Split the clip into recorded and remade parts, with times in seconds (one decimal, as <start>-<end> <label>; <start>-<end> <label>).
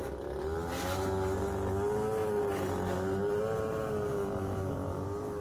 0.0-4.1 recorded; 4.1-5.4 remade